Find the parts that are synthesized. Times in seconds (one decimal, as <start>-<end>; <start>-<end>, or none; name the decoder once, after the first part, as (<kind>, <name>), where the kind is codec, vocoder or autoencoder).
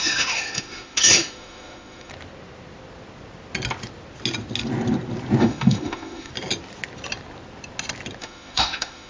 0.0-2.1 (autoencoder, DAC-VAE); 5.4-6.3; 8.2-9.1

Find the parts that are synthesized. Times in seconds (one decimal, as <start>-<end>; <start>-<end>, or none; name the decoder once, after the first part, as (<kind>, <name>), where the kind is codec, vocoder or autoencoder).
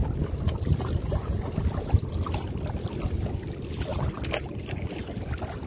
none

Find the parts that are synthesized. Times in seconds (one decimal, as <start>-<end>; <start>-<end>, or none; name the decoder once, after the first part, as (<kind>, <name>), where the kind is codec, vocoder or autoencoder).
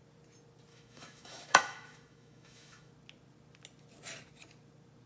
0.7-2.9 (autoencoder, DAC-VAE)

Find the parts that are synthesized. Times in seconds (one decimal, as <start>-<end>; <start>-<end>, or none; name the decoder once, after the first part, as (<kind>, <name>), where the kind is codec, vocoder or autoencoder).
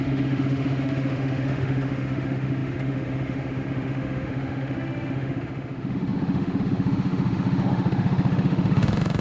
0.0-9.2 (autoencoder, DAC-VAE)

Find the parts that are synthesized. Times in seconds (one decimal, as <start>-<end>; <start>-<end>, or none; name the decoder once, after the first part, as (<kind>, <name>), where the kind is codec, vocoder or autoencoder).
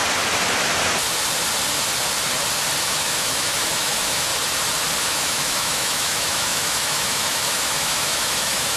2.8-4.3 (autoencoder, DAC-VAE); 5.0-8.8